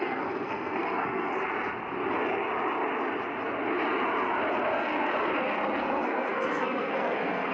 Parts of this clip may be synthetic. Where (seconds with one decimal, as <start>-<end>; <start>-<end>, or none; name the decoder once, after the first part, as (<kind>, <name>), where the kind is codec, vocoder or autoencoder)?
0.0-1.3 (codec, SNAC); 5.8-7.5